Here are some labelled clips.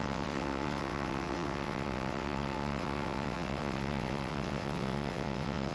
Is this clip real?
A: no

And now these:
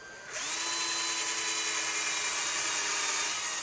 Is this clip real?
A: yes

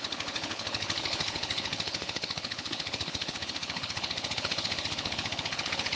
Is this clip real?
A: no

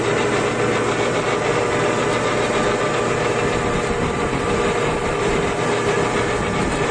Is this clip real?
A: yes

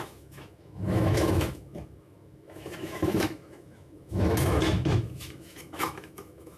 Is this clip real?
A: no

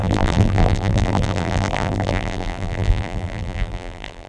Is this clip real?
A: no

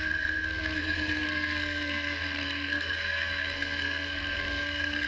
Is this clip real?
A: no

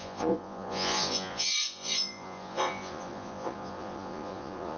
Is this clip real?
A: no